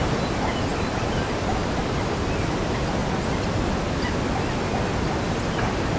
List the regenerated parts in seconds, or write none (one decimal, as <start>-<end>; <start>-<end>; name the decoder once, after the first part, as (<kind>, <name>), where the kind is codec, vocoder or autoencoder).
none